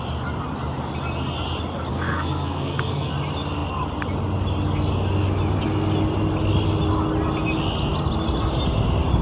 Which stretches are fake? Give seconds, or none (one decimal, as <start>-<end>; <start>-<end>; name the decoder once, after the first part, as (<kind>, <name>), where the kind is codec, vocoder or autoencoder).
1.9-3.1 (codec, SNAC)